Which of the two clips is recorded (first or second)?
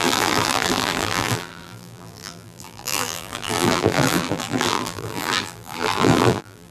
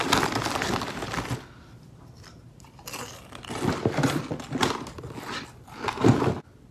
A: second